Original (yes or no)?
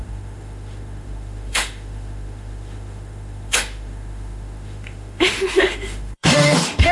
no